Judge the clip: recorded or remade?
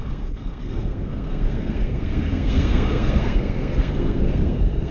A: remade